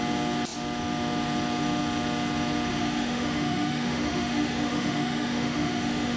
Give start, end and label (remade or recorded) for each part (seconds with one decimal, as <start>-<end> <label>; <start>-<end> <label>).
0.0-2.7 recorded; 2.7-6.2 remade